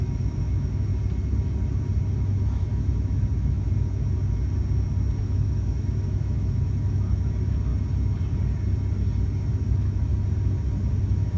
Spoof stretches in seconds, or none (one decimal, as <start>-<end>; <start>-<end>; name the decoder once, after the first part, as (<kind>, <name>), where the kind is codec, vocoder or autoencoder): 0.0-0.9 (autoencoder, DAC-VAE); 2.2-3.7; 5.2-7.7; 9.5-10.1; 11.0-11.4